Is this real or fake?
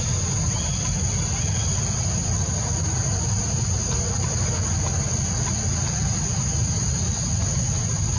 real